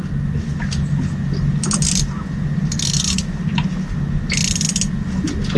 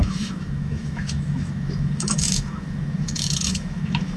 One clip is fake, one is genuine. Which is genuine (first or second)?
first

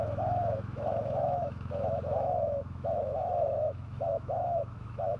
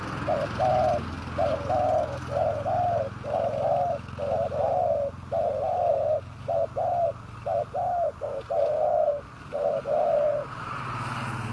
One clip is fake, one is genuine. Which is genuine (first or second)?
second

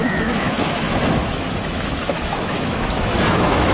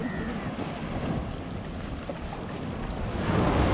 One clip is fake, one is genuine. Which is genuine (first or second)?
second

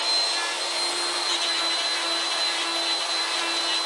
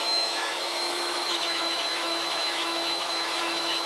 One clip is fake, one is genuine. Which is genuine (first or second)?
first